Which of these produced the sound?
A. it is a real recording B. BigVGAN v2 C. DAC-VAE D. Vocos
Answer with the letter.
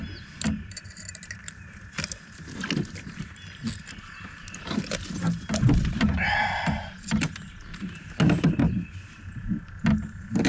A